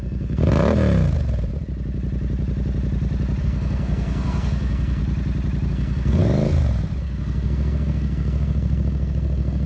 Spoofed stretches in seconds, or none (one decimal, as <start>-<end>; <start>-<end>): 0.0-0.4; 3.4-5.0; 5.7-6.2; 7.0-9.7